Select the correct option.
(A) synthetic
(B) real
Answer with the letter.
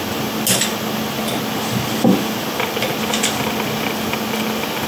B